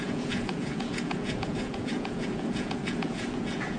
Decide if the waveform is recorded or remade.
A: remade